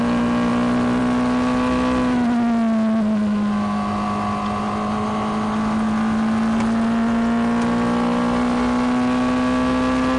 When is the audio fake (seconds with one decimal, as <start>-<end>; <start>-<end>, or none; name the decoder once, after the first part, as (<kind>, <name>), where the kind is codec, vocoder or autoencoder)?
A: none

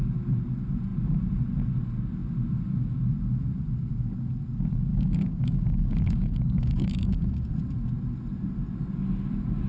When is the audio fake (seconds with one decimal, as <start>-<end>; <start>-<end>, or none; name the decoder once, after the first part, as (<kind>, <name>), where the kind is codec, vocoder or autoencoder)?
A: 4.9-7.5 (codec, DAC)

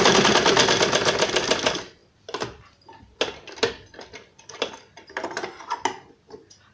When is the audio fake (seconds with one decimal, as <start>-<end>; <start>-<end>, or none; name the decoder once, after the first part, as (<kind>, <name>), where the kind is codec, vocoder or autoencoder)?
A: none

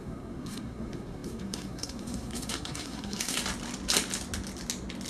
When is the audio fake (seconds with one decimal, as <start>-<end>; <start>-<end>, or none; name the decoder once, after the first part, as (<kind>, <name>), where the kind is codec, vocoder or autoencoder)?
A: 0.0-3.4 (codec, SNAC)

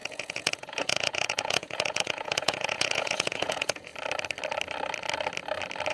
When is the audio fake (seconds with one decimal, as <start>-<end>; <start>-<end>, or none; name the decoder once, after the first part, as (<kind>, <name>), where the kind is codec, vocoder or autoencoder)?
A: 0.0-3.9 (vocoder, Vocos)

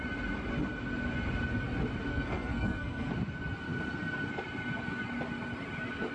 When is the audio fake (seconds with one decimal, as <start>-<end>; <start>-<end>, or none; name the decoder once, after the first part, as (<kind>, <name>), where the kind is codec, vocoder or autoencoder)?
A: 2.1-3.1 (codec, SNAC)